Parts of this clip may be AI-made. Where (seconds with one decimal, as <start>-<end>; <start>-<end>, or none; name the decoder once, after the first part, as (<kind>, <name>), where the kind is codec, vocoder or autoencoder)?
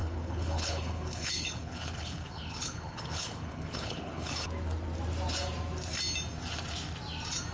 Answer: 0.0-4.5 (codec, HILCodec)